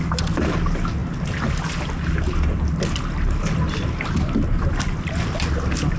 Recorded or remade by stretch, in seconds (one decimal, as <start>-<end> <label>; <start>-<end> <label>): 0.0-6.0 recorded